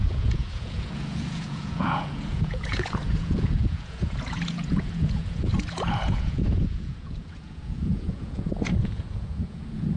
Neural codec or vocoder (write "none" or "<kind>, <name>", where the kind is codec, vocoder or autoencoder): vocoder, Vocos